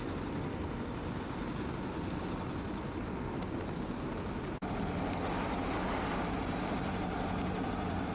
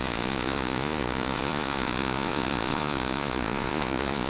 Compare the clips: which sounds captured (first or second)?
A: first